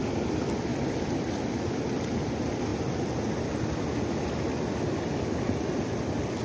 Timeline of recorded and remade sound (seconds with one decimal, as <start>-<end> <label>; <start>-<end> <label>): 0.0-6.4 recorded

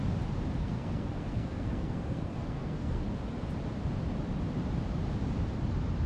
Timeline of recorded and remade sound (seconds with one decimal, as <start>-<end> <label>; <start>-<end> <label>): 0.0-0.6 recorded; 0.6-3.0 remade; 3.0-6.1 recorded

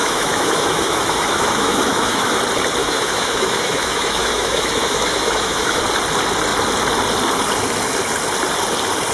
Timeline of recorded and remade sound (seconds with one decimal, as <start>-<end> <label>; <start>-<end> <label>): 0.0-2.4 remade; 2.4-2.8 recorded; 2.8-5.8 remade; 5.8-9.1 recorded

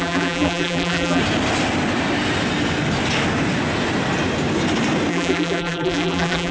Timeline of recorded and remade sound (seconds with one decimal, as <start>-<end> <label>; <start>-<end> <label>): 0.0-1.2 remade; 1.2-5.1 recorded; 5.1-6.5 remade